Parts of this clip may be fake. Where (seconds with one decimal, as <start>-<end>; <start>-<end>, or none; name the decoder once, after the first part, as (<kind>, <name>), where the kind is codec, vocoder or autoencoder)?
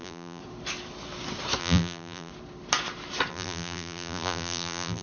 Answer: 0.0-0.4 (vocoder, BigVGAN v2); 1.6-2.3; 3.3-5.0